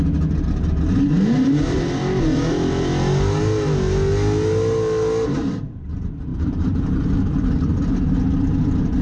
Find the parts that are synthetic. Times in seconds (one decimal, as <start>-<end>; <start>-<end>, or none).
6.3-7.9

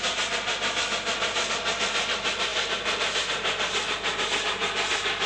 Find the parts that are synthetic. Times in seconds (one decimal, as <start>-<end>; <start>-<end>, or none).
none

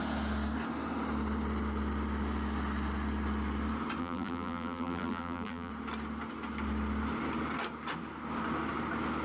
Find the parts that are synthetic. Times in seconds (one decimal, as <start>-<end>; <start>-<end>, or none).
4.0-5.7

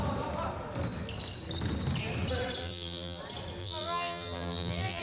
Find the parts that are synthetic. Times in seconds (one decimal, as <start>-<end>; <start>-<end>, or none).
2.6-3.2; 3.6-5.0

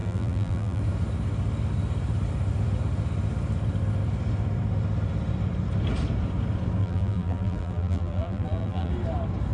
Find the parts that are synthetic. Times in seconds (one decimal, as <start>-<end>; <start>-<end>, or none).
0.0-0.8; 6.8-8.9

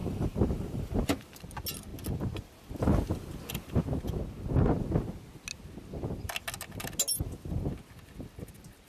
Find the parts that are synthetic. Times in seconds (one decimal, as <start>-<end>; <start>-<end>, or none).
0.0-1.3

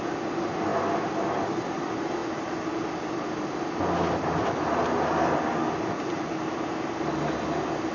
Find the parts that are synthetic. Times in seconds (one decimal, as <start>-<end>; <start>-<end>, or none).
none